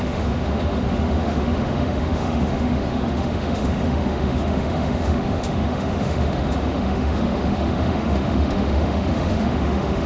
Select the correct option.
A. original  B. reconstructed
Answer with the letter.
B